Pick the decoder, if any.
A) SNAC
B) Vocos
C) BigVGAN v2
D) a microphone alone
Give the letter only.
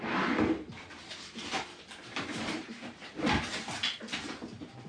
C